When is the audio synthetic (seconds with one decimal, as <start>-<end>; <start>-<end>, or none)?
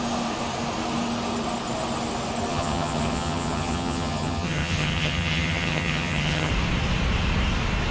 2.5-6.5